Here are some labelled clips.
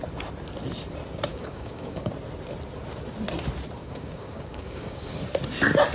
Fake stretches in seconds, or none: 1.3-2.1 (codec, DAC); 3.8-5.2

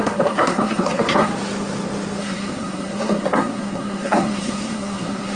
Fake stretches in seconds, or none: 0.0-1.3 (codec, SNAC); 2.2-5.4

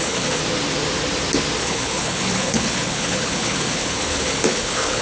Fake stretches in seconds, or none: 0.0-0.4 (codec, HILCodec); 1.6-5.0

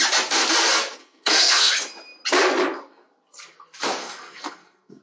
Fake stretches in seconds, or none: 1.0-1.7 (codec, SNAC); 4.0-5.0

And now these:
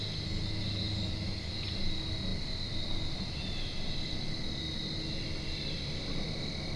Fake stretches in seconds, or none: none

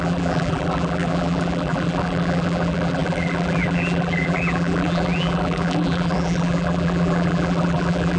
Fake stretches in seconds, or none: 0.0-8.2 (vocoder, BigVGAN v2)

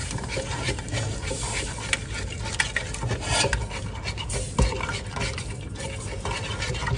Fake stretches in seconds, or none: 0.0-1.7 (vocoder, BigVGAN v2)